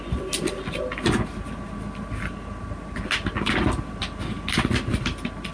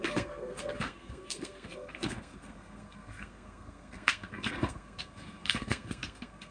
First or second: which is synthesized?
second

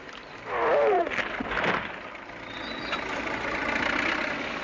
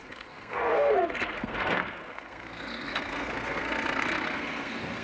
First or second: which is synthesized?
second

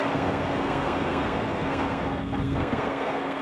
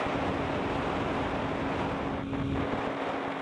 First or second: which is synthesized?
first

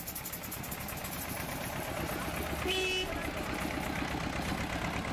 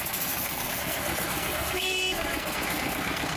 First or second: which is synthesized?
second